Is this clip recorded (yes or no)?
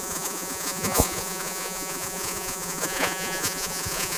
no